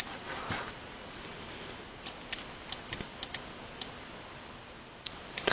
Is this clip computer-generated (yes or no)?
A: no